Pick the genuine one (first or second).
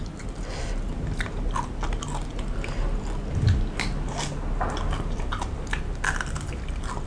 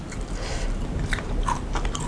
first